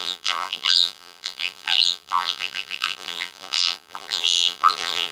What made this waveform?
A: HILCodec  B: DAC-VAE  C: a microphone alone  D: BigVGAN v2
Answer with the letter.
D